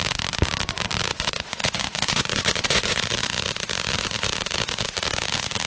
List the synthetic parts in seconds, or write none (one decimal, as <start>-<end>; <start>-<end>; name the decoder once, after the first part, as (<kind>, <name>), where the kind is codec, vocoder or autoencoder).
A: 1.1-3.0 (vocoder, Vocos)